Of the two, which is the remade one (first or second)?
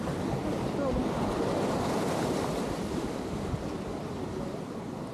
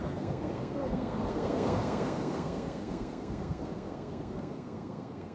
second